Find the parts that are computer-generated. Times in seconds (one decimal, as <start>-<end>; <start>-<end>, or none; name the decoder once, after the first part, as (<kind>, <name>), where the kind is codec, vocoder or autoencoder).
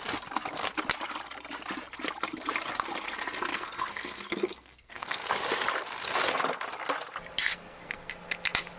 3.5-5.3 (codec, SNAC); 7.5-8.1